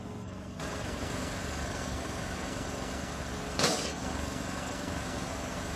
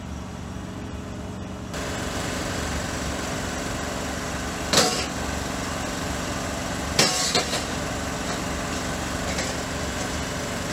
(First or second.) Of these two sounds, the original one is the second